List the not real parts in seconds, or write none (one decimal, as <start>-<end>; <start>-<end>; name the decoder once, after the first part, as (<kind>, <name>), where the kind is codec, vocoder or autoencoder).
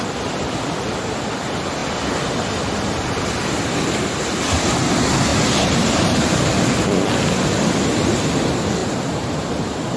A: 5.3-6.6 (vocoder, BigVGAN v2); 8.8-10.0